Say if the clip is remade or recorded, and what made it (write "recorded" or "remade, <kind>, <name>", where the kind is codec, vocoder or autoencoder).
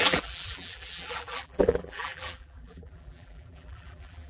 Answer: remade, vocoder, BigVGAN v2